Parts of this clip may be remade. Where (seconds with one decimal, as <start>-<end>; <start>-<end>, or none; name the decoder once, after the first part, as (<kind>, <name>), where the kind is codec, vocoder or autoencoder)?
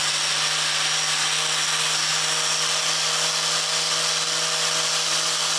none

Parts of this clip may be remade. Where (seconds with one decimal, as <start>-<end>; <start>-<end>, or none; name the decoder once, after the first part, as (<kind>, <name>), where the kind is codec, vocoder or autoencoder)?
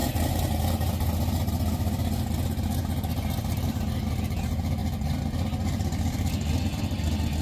none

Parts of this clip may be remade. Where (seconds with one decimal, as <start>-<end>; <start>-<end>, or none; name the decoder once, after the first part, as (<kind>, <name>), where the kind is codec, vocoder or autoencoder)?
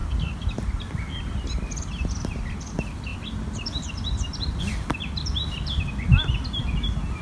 0.0-6.1 (vocoder, BigVGAN v2); 6.6-7.2